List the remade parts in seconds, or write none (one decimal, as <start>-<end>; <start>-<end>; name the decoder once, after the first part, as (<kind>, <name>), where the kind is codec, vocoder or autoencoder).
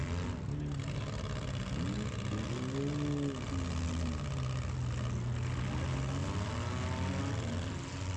none